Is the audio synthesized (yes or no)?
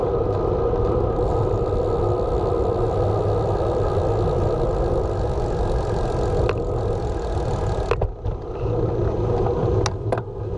no